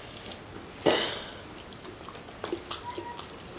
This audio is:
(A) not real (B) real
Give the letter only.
B